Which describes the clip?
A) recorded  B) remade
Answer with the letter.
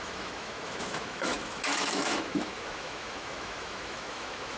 B